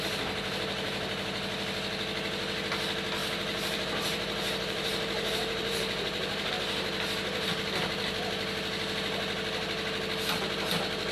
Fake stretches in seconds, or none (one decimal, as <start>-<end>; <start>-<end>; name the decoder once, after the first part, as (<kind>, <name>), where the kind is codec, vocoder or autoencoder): 3.2-6.5 (vocoder, BigVGAN v2)